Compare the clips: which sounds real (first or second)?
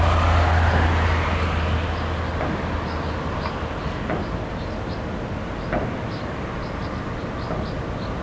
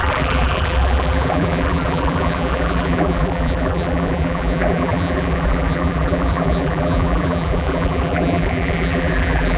first